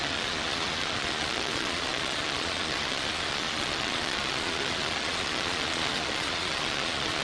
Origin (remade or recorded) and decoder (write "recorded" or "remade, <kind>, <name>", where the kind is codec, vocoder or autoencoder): remade, vocoder, Vocos